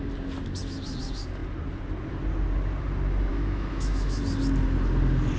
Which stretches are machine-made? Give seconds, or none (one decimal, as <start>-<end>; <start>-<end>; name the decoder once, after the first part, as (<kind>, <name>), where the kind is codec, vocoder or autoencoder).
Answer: 3.3-4.2 (autoencoder, DAC-VAE)